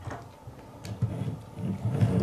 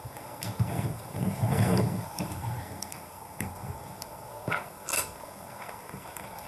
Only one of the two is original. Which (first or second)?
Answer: first